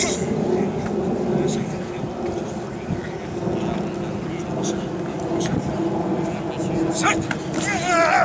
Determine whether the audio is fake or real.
real